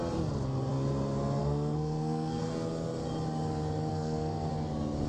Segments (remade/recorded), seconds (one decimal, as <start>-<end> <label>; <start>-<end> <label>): 0.0-1.4 recorded; 1.4-2.5 remade; 2.5-3.9 recorded; 3.9-4.5 remade; 4.5-5.1 recorded